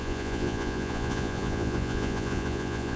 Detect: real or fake fake